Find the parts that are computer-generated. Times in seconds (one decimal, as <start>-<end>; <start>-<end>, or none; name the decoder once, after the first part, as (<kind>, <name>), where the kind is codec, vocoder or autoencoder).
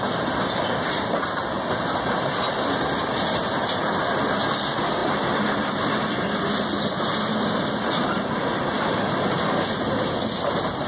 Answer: none